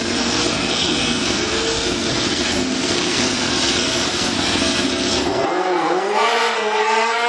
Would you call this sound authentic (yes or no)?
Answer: no